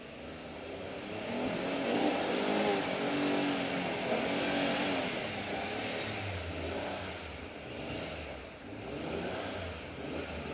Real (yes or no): yes